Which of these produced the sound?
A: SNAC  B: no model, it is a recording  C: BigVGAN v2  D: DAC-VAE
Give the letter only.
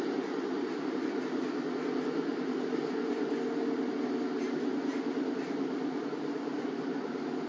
B